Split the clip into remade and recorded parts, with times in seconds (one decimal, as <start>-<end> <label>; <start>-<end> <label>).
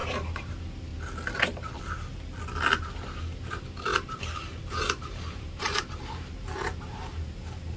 0.0-0.5 remade; 0.5-3.9 recorded; 3.9-6.3 remade; 6.3-7.8 recorded